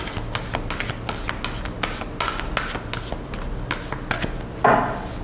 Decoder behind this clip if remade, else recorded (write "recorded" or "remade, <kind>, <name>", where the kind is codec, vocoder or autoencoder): recorded